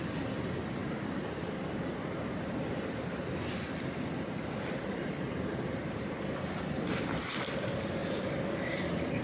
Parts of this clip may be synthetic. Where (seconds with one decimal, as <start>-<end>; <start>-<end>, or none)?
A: 0.8-1.4; 5.0-7.0